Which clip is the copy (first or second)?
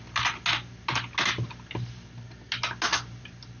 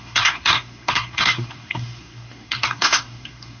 second